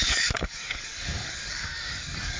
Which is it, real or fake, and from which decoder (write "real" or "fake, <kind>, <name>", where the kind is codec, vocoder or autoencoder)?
fake, codec, DAC